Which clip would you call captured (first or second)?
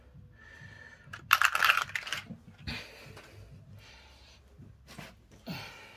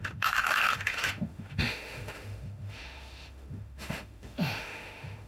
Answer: first